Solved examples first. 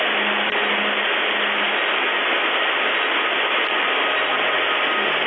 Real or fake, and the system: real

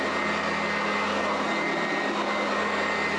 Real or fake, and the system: real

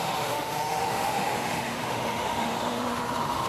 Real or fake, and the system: fake, autoencoder, DAC-VAE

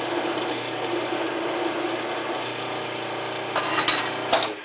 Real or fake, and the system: real